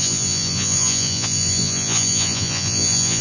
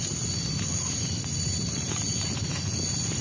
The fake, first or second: first